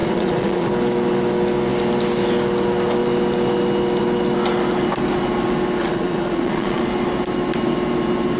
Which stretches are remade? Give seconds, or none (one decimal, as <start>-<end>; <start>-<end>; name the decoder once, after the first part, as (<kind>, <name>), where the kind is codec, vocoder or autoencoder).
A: 0.0-0.7 (vocoder, Vocos); 5.8-6.8